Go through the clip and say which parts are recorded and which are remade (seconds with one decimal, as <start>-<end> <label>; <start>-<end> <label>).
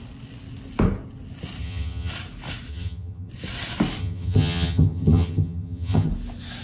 0.0-1.6 recorded; 1.6-2.1 remade; 2.1-2.7 recorded; 2.7-3.3 remade; 3.3-4.0 recorded; 4.0-6.1 remade; 6.1-6.6 recorded